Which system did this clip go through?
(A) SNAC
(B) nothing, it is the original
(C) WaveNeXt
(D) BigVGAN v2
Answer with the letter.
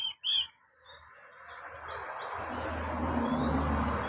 B